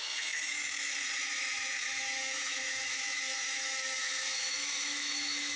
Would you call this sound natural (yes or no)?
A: no